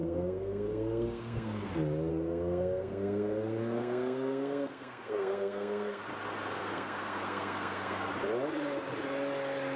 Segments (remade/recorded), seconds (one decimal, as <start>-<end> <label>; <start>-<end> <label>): 0.0-1.7 remade; 1.7-2.1 recorded; 2.1-6.0 remade; 6.0-6.6 recorded; 6.6-8.1 remade; 8.1-9.8 recorded